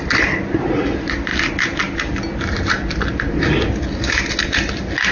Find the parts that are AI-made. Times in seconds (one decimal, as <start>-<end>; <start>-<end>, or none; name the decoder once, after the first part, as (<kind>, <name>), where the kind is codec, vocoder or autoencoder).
none